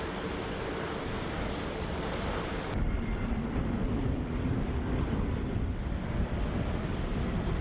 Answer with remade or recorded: recorded